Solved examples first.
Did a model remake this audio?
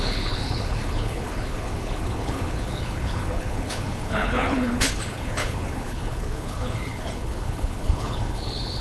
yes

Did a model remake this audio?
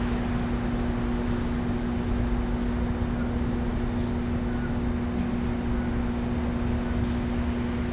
no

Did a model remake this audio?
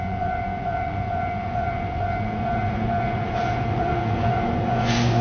yes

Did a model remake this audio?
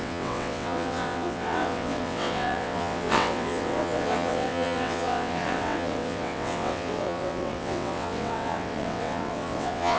yes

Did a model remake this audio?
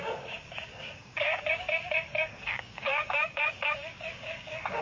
yes